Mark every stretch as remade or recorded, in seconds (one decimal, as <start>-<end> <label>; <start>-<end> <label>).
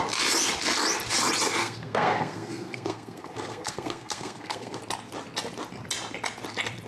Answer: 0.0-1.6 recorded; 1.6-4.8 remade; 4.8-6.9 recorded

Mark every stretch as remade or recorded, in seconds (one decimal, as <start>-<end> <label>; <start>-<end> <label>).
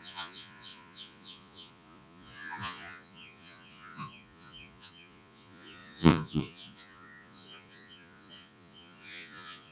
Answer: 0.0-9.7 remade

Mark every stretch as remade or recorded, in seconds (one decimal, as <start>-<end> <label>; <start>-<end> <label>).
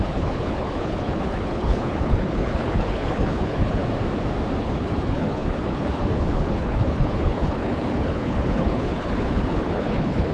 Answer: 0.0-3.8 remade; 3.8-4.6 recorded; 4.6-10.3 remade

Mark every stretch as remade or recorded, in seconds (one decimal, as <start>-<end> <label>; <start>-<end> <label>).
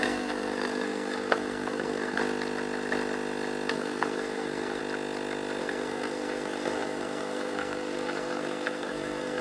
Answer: 0.0-2.2 remade; 2.2-3.7 recorded; 3.7-4.8 remade; 4.8-5.6 recorded; 5.6-9.4 remade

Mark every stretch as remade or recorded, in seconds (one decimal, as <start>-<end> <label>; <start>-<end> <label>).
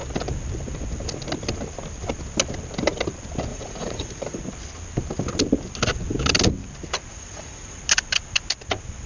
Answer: 0.0-3.5 recorded; 3.5-4.4 remade; 4.4-7.1 recorded; 7.1-7.8 remade; 7.8-9.1 recorded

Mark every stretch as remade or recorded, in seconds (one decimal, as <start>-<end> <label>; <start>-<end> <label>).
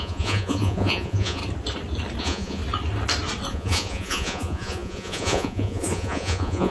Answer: 0.0-1.4 remade; 1.4-2.2 recorded; 2.2-2.6 remade; 2.6-3.5 recorded; 3.5-6.7 remade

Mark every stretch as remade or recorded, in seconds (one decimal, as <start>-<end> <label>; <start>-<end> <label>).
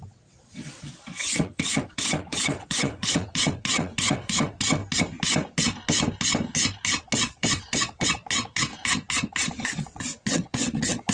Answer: 0.0-4.8 remade; 4.8-7.0 recorded; 7.0-8.7 remade; 8.7-9.8 recorded; 9.8-11.1 remade